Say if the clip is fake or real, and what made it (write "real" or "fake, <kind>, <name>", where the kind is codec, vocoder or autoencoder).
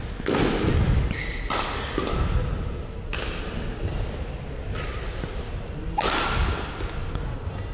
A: real